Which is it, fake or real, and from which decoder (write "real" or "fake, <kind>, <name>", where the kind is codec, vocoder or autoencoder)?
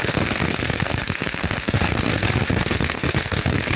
fake, codec, SNAC